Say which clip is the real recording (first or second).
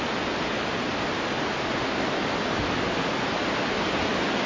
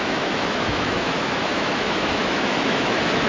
first